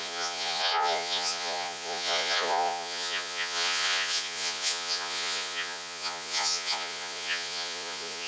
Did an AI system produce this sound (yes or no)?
yes